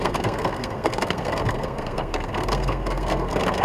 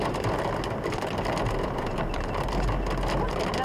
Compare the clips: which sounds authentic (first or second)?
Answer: second